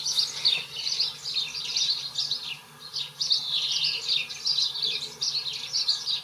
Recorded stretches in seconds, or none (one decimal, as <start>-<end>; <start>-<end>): 0.0-6.2